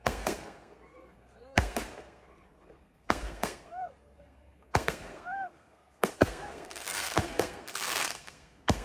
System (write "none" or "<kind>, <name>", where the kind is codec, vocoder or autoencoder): codec, SNAC